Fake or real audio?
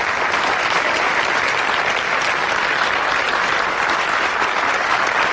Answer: real